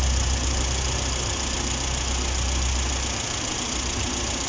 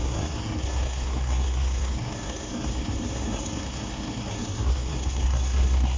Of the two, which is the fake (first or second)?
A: second